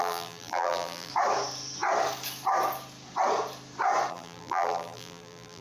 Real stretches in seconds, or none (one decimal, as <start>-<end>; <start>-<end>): 1.1-4.1